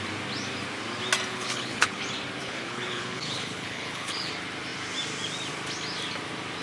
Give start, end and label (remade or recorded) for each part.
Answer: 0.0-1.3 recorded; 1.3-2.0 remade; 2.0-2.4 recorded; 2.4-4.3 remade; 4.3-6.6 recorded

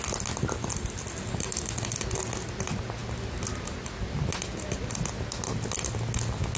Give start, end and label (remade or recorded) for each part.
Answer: 0.0-6.6 recorded

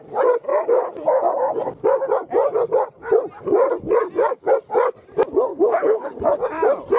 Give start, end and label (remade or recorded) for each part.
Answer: 0.0-5.5 recorded; 5.5-6.1 remade; 6.1-7.0 recorded

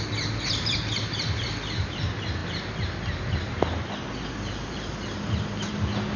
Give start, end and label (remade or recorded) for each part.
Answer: 0.0-6.2 recorded

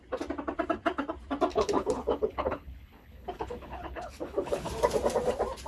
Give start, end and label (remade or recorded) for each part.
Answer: 0.0-1.5 recorded; 1.5-4.7 remade; 4.7-5.7 recorded

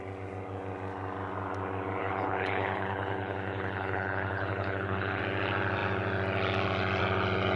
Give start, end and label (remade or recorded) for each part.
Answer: 0.0-2.0 recorded; 2.0-5.2 remade; 5.2-7.6 recorded